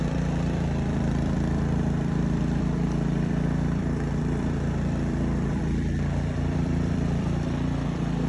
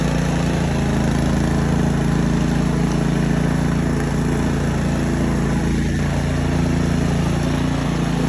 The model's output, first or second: first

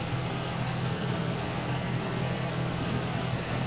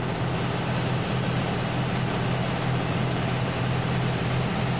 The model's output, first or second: first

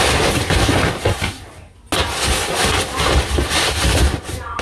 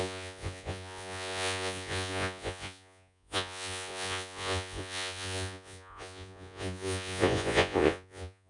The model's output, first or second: second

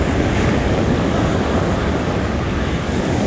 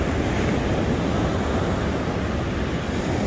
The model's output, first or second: first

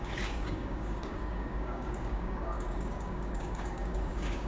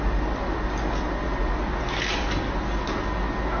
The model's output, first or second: first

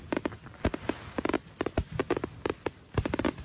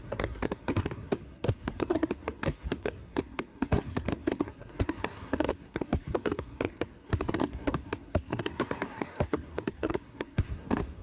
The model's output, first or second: second